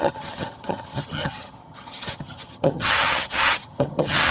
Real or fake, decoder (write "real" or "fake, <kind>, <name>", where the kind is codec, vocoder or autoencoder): fake, vocoder, HiFi-GAN